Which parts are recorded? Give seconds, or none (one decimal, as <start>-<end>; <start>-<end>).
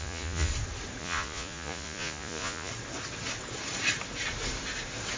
0.5-1.0; 2.7-5.2